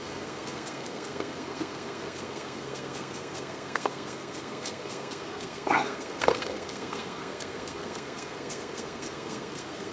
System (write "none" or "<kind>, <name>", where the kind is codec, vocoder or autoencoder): codec, SNAC